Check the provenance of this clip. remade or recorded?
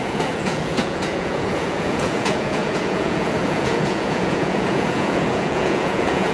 remade